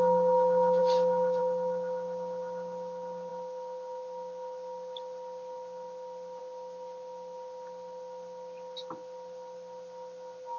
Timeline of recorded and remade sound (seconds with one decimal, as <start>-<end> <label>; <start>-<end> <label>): 0.0-10.6 recorded